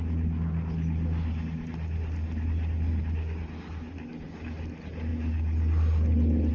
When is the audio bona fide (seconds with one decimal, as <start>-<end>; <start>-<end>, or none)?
0.0-6.5